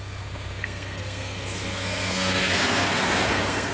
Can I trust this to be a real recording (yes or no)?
no